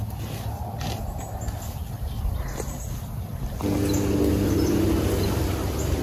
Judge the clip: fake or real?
real